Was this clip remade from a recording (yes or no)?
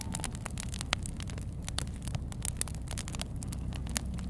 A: no